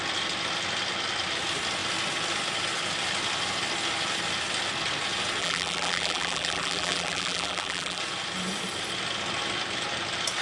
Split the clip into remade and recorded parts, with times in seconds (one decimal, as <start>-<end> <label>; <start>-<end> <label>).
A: 0.0-5.4 recorded; 5.4-8.0 remade; 8.0-10.4 recorded